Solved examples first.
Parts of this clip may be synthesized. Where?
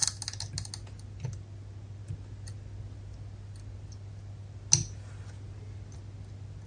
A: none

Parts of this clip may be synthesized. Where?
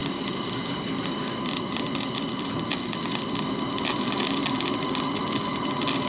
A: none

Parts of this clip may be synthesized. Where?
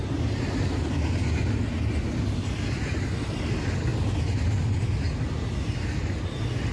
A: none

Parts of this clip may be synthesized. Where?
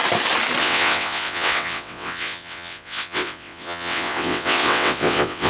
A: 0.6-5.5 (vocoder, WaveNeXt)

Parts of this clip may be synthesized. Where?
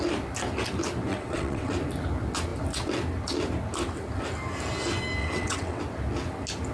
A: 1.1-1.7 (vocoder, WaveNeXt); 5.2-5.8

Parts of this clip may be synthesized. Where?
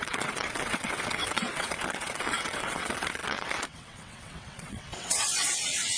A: 0.0-6.0 (vocoder, WaveNeXt)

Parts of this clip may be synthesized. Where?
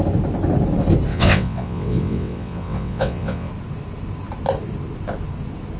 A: 1.1-3.5 (vocoder, WaveNeXt)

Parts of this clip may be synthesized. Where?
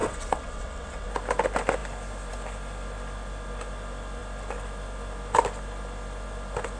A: 0.0-1.1 (vocoder, WaveNeXt)